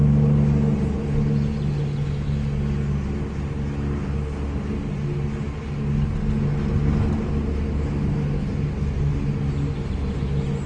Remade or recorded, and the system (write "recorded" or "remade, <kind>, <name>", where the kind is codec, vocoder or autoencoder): recorded